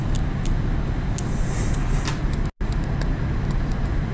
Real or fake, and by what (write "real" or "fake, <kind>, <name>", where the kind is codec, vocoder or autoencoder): real